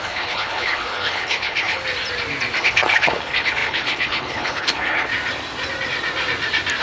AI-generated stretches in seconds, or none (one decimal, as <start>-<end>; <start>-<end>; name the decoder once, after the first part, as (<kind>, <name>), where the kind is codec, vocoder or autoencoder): 0.0-1.8 (codec, HILCodec); 2.6-5.1